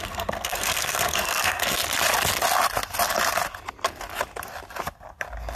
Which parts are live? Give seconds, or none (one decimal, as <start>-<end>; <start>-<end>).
1.8-5.6